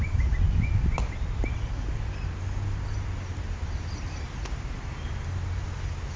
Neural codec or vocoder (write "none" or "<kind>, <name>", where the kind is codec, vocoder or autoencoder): none